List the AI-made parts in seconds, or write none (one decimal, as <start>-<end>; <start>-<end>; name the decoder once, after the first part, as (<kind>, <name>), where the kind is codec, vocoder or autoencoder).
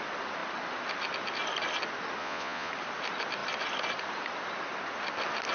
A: 2.2-2.7 (vocoder, Vocos)